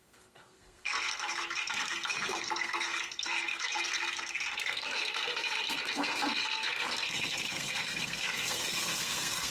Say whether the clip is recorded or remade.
remade